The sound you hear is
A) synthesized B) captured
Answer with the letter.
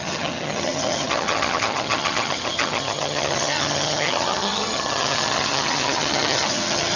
A